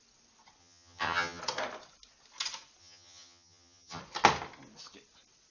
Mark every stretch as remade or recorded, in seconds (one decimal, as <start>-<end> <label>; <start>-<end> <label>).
0.0-0.6 recorded; 0.6-1.4 remade; 1.4-2.8 recorded; 2.8-4.0 remade; 4.0-5.5 recorded